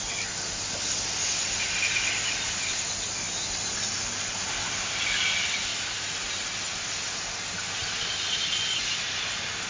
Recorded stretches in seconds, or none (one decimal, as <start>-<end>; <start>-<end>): 0.0-9.7